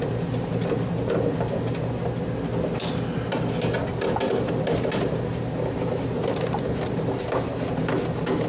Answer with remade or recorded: recorded